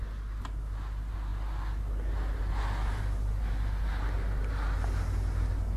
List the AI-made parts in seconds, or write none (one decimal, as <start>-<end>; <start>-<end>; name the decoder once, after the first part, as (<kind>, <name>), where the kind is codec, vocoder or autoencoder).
none